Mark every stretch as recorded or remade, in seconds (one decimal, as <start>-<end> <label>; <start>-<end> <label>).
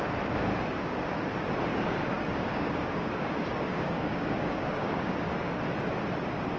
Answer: 0.0-0.5 recorded; 0.5-1.0 remade; 1.0-1.7 recorded; 1.7-5.6 remade; 5.6-6.6 recorded